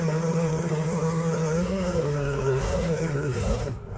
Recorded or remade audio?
remade